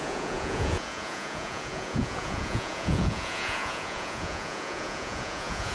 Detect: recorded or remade remade